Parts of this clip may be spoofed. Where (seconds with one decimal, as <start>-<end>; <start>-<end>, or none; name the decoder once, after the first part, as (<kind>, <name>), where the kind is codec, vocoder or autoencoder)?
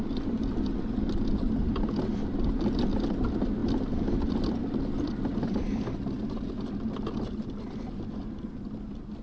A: none